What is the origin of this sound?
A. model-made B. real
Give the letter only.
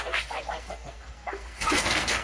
A